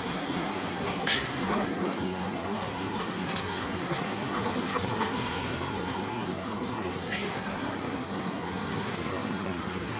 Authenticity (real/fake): fake